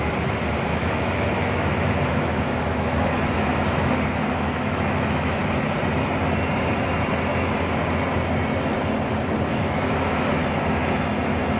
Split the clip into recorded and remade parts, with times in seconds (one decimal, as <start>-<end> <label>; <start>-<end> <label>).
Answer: 0.0-5.4 remade; 5.4-9.5 recorded; 9.5-10.4 remade; 10.4-11.6 recorded